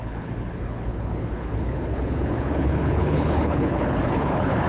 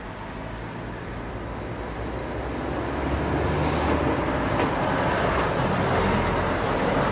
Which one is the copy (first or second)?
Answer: first